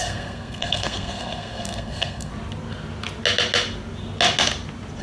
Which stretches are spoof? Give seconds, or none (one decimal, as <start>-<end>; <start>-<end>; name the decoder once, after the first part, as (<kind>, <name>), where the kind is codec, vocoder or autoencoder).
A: 0.0-2.3 (codec, SNAC)